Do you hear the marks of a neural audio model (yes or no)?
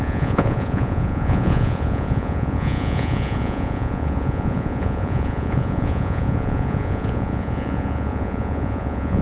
yes